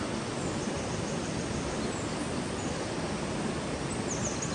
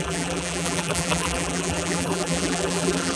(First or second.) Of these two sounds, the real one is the first